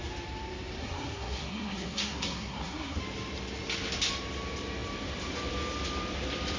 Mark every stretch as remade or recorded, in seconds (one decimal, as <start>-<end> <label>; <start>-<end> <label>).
0.0-0.8 recorded; 0.8-3.0 remade; 3.0-6.6 recorded